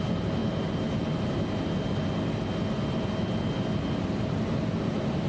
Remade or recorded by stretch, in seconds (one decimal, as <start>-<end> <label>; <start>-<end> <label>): 0.0-5.3 recorded